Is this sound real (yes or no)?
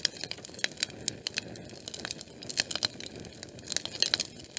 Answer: yes